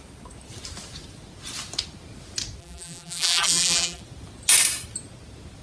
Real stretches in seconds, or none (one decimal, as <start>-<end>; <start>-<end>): 0.0-2.6; 4.0-5.6